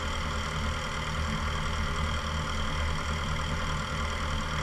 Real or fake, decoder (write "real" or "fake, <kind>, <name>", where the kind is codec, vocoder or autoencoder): real